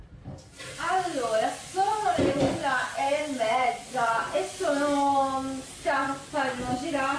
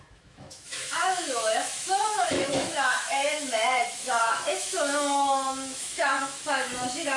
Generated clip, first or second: second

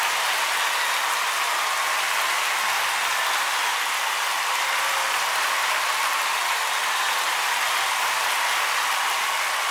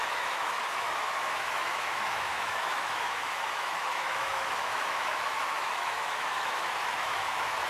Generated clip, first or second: second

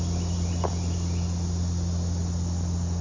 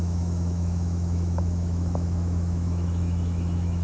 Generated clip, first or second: second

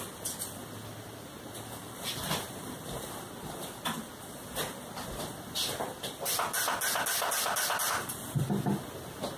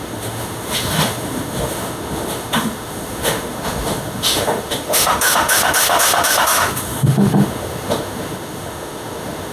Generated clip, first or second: second